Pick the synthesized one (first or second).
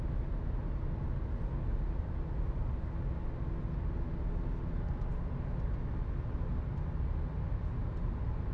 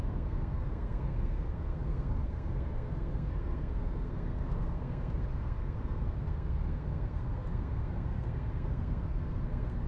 second